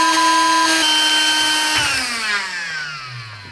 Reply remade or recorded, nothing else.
recorded